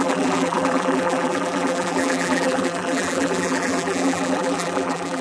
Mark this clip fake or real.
fake